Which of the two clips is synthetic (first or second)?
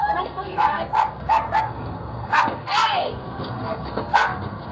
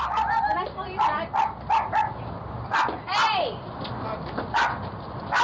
first